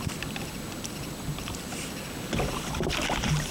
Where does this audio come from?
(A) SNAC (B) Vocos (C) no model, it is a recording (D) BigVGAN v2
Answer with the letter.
C